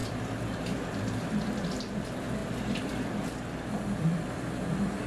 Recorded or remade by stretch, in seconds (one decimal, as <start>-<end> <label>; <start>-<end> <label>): 0.0-5.1 remade